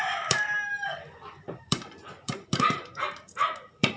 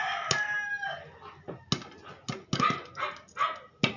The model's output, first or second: first